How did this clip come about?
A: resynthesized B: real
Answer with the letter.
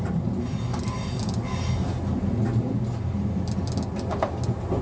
B